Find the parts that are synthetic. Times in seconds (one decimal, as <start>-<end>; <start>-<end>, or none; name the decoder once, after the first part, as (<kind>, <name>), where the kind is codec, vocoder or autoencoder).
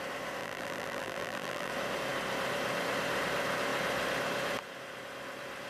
0.4-1.7 (vocoder, BigVGAN v2)